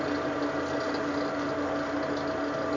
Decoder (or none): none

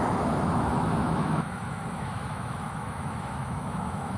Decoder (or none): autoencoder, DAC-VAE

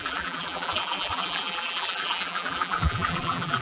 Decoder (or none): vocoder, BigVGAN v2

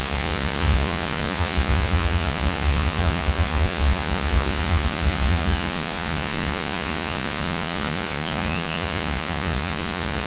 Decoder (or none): vocoder, Vocos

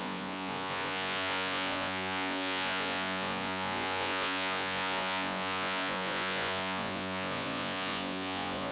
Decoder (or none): vocoder, Vocos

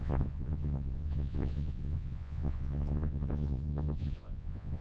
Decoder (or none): vocoder, Vocos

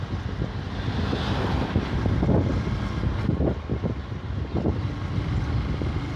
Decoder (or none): none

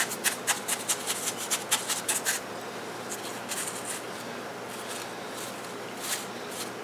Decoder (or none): none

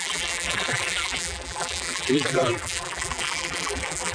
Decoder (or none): vocoder, BigVGAN v2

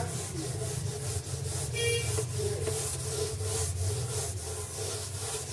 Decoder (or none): none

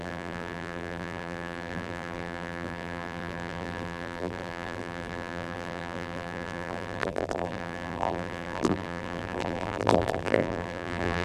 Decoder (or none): vocoder, BigVGAN v2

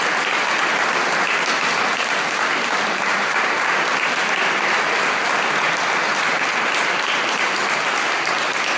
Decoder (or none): none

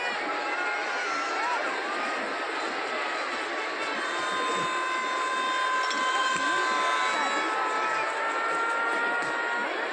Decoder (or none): none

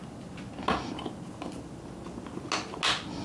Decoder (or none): none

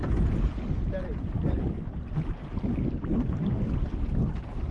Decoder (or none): none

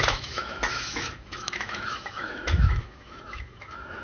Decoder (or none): autoencoder, DAC-VAE